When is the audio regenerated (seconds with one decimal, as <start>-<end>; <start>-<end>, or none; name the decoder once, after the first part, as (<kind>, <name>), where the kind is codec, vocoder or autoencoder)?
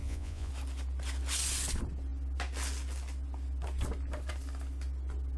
0.0-0.5 (vocoder, Vocos)